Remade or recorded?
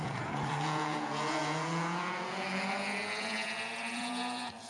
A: remade